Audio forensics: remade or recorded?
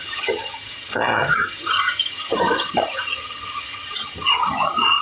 remade